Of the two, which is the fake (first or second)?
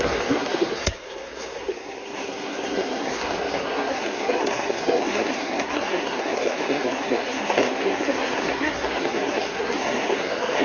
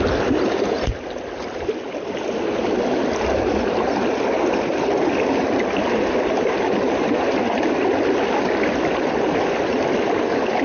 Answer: first